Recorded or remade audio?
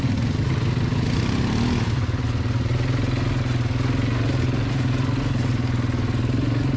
recorded